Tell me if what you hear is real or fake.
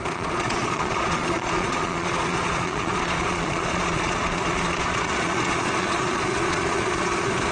fake